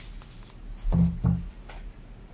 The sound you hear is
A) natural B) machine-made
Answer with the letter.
A